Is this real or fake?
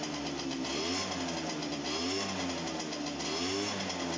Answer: real